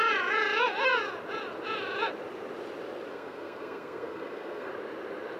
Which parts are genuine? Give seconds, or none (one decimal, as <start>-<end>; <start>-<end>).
0.0-3.1; 4.7-5.4

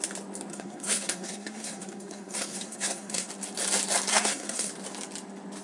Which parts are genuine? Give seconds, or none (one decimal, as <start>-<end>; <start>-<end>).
0.0-0.5; 3.3-4.1; 4.7-5.6

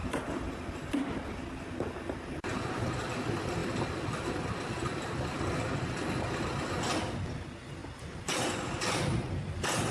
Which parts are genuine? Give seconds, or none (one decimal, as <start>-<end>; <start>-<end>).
0.0-9.9

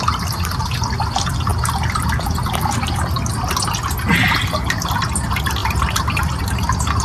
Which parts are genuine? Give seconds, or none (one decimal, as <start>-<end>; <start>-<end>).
0.0-5.6; 6.4-7.0

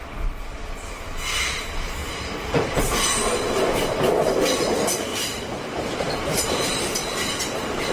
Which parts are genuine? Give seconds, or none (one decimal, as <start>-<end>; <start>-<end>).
0.0-2.0; 4.1-7.9

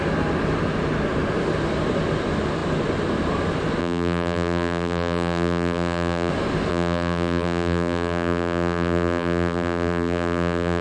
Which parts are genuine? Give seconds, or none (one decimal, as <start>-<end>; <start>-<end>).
0.0-3.8; 6.3-6.7